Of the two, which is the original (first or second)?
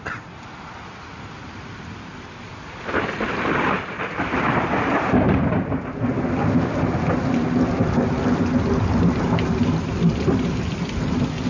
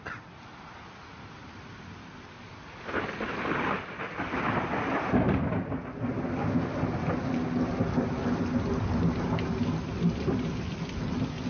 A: second